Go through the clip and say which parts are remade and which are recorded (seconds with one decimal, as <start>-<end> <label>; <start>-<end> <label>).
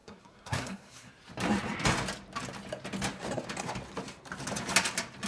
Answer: 0.0-1.1 remade; 1.1-5.3 recorded